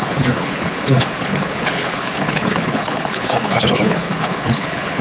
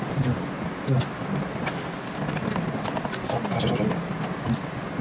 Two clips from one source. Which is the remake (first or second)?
first